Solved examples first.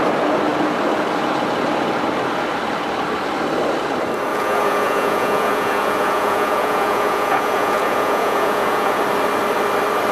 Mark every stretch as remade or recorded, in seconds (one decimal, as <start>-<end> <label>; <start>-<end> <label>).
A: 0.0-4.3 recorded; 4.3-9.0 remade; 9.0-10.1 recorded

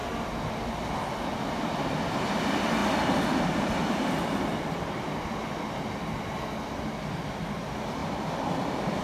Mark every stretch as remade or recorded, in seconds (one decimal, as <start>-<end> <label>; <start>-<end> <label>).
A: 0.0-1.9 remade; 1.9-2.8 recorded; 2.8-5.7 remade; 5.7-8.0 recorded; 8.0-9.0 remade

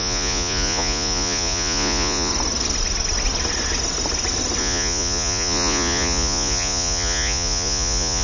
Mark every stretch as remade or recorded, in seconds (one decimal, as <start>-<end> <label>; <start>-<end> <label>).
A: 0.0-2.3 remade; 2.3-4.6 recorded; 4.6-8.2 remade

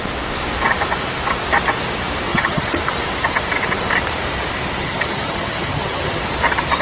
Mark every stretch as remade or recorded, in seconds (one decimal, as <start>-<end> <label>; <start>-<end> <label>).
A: 0.0-2.3 recorded; 2.3-2.8 remade; 2.8-4.8 recorded; 4.8-6.2 remade; 6.2-6.8 recorded

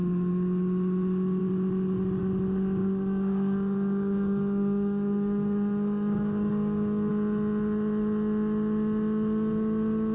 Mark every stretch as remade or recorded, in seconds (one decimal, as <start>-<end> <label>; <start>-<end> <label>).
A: 0.0-2.8 recorded; 2.8-7.1 remade; 7.1-10.1 recorded

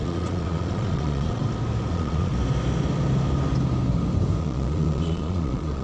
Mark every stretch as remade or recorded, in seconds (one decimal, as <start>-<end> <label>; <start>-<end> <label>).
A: 0.0-1.4 remade; 1.4-1.9 recorded; 1.9-2.3 remade; 2.3-4.4 recorded; 4.4-5.8 remade

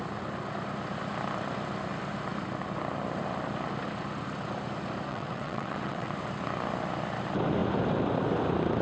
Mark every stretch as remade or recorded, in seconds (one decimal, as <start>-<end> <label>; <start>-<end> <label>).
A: 0.0-5.1 recorded; 5.1-6.1 remade; 6.1-8.8 recorded